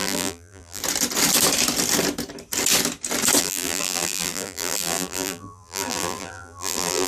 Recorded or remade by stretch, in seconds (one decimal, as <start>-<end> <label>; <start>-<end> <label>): 0.0-0.8 remade; 0.8-3.4 recorded; 3.4-7.1 remade